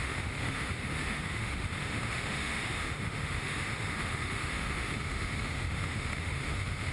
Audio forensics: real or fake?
fake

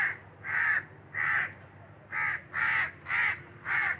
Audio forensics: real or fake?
real